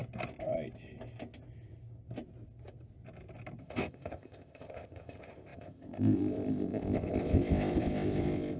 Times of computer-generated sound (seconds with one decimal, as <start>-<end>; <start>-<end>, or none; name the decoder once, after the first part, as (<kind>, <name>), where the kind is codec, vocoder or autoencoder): 3.6-8.6 (codec, ZipCodec)